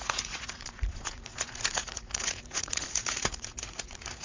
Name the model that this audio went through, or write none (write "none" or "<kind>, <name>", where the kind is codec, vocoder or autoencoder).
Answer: vocoder, Vocos